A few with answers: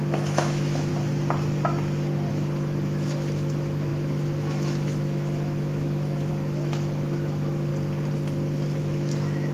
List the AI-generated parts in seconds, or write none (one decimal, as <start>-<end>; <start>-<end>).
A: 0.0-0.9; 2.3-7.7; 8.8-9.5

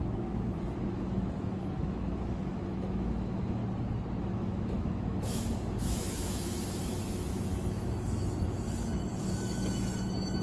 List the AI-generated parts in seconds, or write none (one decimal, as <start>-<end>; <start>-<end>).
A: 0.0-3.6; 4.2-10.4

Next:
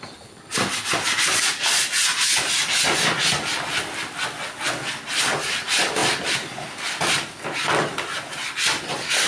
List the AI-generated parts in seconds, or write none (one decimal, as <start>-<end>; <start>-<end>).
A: none

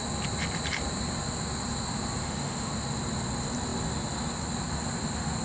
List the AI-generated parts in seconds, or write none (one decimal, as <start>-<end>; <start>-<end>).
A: 2.2-2.7

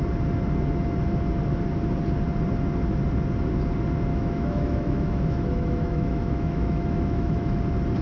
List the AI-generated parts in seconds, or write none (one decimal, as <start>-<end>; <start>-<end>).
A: 4.1-7.6

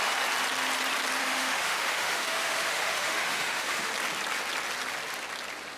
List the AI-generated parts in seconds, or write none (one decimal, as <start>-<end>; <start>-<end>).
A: 1.2-3.9

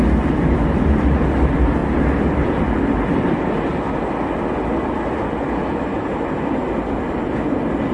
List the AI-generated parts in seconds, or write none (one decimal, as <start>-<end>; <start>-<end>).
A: none

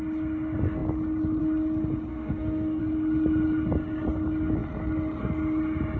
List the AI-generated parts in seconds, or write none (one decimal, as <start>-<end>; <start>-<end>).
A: 2.1-2.8